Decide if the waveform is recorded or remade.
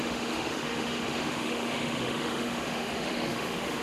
remade